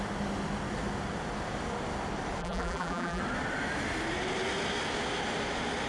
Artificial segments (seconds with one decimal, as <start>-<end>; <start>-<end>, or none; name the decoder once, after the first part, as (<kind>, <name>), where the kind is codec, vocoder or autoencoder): 2.4-3.2 (vocoder, BigVGAN v2)